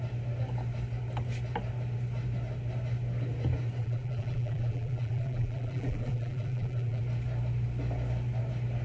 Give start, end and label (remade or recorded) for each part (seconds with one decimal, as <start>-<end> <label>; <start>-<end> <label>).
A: 0.0-3.8 recorded; 3.8-7.0 remade; 7.0-8.8 recorded